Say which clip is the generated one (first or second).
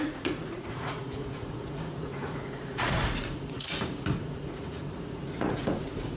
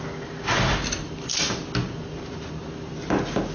first